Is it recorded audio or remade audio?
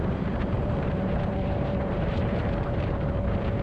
remade